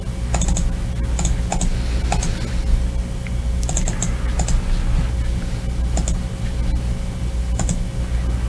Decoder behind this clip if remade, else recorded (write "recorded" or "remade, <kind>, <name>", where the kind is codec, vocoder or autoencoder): recorded